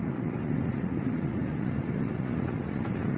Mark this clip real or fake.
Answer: fake